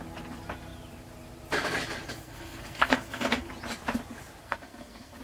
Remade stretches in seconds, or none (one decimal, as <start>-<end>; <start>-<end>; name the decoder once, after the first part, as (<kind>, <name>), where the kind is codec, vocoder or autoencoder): 2.2-3.5 (codec, SNAC); 4.4-5.2